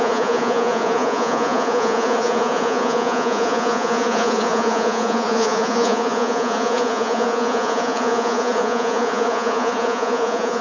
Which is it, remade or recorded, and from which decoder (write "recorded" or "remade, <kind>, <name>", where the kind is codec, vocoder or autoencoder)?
remade, vocoder, Vocos